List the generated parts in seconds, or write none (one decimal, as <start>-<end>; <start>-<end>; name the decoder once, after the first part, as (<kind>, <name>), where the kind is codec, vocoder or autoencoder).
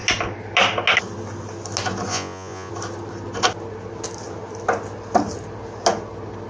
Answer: 2.1-2.7 (vocoder, Vocos)